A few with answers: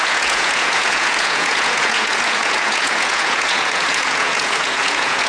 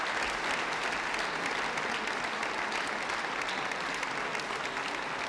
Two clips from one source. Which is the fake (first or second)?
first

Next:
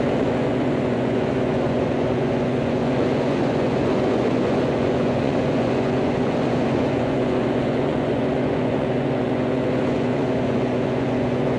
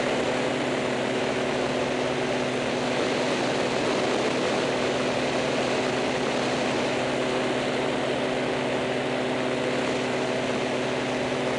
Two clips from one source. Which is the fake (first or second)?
first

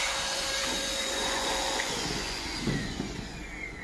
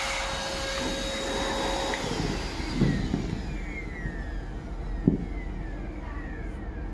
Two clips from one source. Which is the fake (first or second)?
first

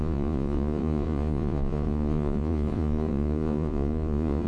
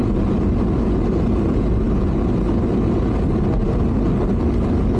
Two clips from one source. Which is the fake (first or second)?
first